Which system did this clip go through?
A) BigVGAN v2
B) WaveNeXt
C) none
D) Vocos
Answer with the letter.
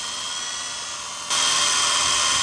C